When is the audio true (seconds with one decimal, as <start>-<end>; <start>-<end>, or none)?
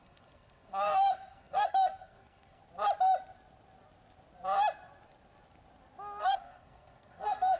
2.6-6.2